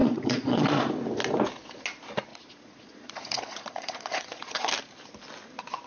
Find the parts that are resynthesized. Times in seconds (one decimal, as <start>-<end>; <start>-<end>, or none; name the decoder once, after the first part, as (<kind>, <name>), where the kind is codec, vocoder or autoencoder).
0.0-0.9 (vocoder, Vocos); 2.3-4.7